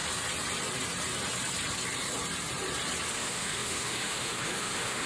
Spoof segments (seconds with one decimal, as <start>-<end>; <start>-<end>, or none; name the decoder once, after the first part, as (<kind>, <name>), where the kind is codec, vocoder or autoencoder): 3.1-5.1 (autoencoder, DAC-VAE)